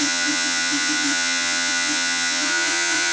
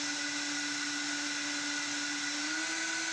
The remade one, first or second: first